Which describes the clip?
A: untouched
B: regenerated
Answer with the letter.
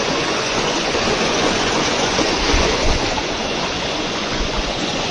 B